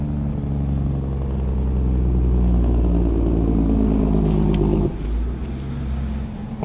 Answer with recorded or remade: recorded